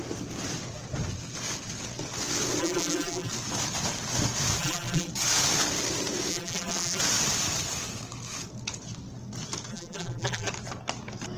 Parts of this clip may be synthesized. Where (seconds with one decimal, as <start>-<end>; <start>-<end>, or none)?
2.6-3.3; 4.6-5.1; 6.3-7.0; 9.7-10.5